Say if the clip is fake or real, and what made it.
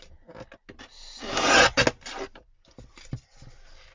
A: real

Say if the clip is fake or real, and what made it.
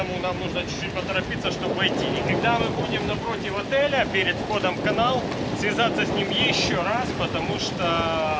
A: real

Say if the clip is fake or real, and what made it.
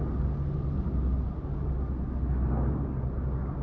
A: real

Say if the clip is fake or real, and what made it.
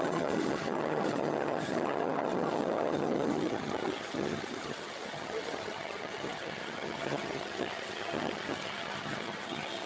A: fake, vocoder, HiFi-GAN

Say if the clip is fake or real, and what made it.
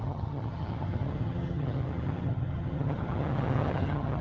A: fake, vocoder, HiFi-GAN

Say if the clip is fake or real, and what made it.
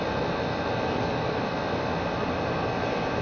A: real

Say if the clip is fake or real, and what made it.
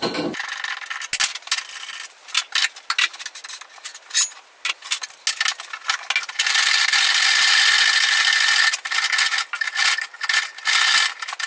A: real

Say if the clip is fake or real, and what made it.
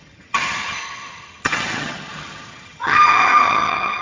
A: fake, vocoder, HiFi-GAN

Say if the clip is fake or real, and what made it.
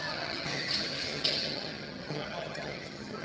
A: fake, vocoder, HiFi-GAN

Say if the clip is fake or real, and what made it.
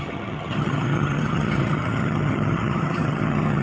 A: fake, vocoder, HiFi-GAN